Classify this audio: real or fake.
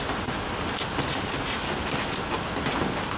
real